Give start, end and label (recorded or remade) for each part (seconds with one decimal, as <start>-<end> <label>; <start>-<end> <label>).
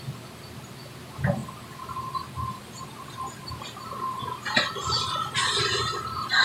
0.0-6.4 recorded